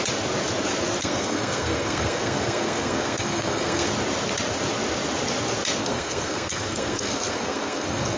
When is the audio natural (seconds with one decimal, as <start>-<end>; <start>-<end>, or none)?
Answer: 0.0-1.0; 3.9-5.8